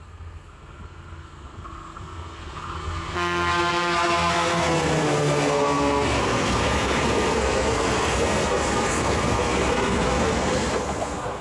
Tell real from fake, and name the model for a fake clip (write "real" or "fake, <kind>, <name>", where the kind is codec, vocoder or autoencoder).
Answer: fake, codec, SNAC